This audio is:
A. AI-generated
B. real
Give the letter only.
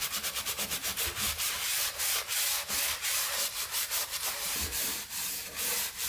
A